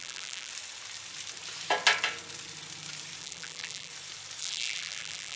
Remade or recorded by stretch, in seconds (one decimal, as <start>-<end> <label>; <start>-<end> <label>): 0.0-0.5 remade; 0.5-3.2 recorded; 3.2-3.9 remade; 3.9-4.4 recorded; 4.4-5.4 remade